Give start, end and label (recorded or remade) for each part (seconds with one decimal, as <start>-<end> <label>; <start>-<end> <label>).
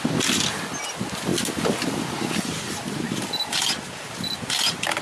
0.0-5.0 recorded